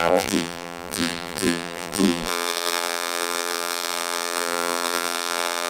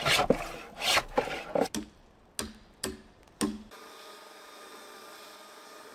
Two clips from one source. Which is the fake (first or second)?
first